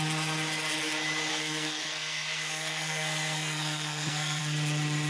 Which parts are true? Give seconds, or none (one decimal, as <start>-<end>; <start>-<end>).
0.0-1.3; 4.4-5.1